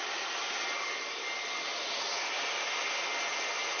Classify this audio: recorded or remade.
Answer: recorded